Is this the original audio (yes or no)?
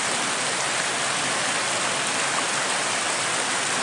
yes